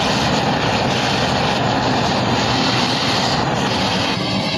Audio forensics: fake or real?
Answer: real